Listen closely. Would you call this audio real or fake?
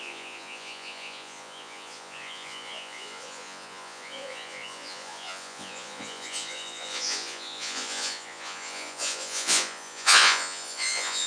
fake